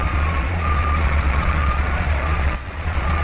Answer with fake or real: fake